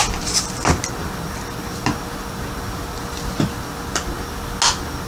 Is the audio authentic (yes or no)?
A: yes